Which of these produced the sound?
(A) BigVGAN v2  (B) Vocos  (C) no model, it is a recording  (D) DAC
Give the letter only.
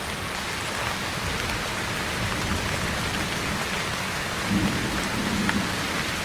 C